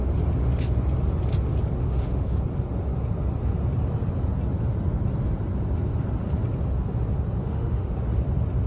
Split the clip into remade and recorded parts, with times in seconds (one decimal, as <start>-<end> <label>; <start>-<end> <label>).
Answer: 0.0-1.8 recorded; 1.8-2.4 remade; 2.4-7.4 recorded; 7.4-7.9 remade; 7.9-8.7 recorded